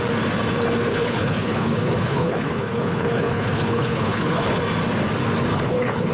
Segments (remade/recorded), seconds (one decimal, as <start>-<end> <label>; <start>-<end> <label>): 0.0-0.9 recorded; 0.9-4.6 remade; 4.6-5.5 recorded; 5.5-6.1 remade